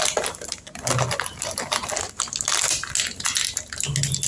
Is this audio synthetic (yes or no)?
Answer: no